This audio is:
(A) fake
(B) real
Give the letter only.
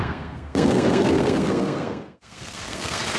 A